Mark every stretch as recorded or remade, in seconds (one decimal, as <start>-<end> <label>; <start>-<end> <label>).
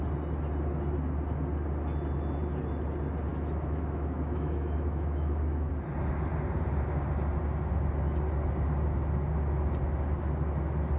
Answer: 0.0-3.3 recorded; 3.3-5.7 remade; 5.7-11.0 recorded